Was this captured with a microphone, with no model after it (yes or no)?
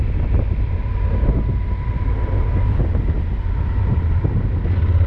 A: yes